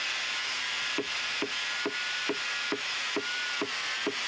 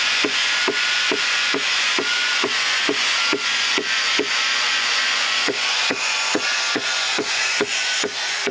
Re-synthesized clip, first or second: second